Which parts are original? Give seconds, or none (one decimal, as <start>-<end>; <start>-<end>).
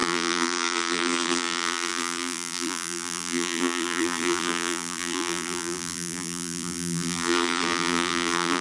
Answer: none